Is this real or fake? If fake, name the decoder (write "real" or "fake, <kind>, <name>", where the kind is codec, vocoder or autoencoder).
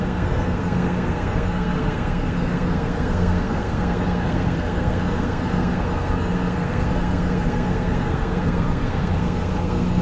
fake, codec, SNAC